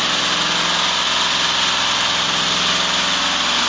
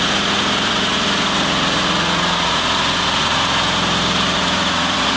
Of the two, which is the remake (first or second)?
second